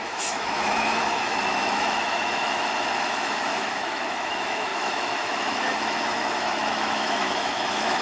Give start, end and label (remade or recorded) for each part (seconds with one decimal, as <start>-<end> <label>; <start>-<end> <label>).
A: 0.0-8.0 remade

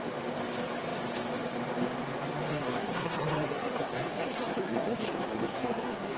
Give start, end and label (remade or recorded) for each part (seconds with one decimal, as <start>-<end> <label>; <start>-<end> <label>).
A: 0.0-2.5 recorded; 2.5-6.2 remade

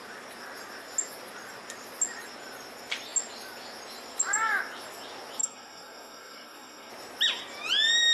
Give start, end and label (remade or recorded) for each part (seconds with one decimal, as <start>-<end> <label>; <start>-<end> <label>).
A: 0.0-5.4 recorded; 5.4-6.9 remade; 6.9-8.1 recorded

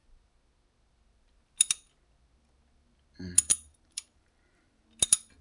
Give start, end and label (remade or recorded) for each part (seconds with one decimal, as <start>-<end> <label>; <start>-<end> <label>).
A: 0.0-3.5 recorded; 3.5-4.8 remade; 4.8-5.4 recorded

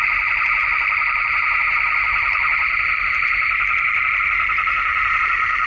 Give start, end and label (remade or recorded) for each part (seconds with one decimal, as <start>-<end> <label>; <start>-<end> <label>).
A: 0.0-0.6 recorded; 0.6-4.0 remade; 4.0-5.7 recorded

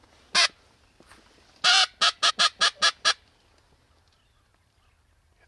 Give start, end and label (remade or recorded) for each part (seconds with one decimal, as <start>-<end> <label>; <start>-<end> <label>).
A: 0.0-5.5 recorded